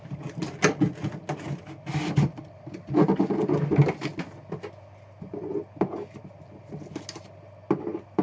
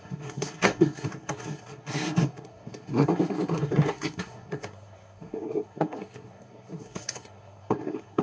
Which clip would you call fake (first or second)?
second